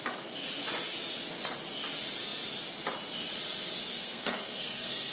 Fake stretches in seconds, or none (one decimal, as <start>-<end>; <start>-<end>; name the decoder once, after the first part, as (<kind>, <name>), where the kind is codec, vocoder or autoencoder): 3.9-5.1 (codec, SNAC)